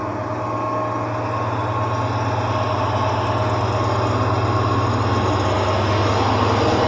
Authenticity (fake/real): real